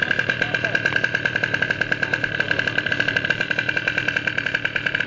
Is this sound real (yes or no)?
no